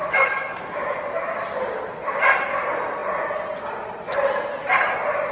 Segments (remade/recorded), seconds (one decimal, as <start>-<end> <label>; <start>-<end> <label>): 0.0-1.3 remade; 1.3-5.3 recorded